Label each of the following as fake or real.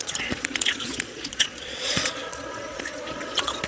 fake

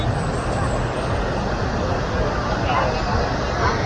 real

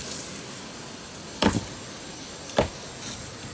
real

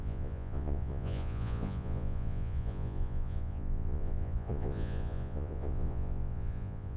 fake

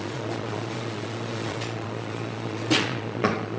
fake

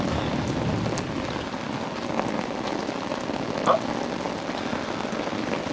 real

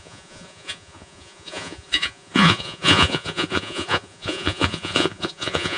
fake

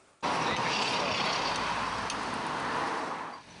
real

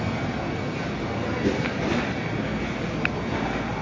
real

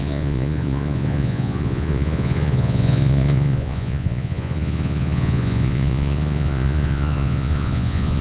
fake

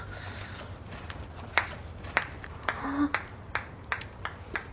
real